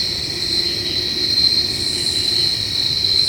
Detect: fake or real real